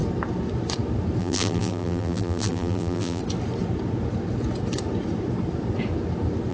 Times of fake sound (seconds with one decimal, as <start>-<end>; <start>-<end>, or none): 1.2-3.2